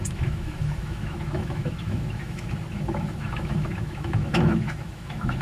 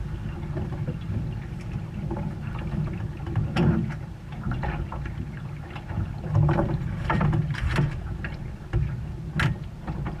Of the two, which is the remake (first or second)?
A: first